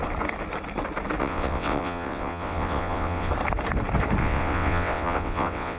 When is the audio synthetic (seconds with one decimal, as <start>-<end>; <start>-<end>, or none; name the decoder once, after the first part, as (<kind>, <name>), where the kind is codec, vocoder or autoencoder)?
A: 1.2-3.3 (vocoder, WaveNeXt); 4.2-5.8